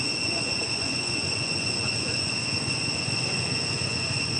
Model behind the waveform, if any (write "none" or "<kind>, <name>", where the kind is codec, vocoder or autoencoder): vocoder, Vocos